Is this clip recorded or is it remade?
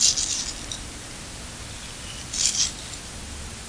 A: recorded